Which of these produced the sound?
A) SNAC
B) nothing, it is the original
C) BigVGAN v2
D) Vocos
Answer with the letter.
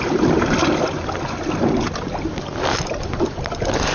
B